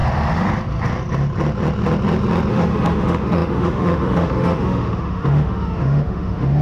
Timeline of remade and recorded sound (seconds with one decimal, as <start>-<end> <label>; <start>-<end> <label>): 0.0-2.5 recorded; 2.5-6.6 remade